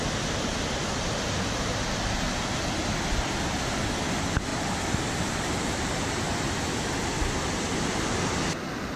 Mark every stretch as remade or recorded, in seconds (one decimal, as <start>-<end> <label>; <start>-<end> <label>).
0.0-4.5 recorded; 4.5-6.3 remade; 6.3-9.0 recorded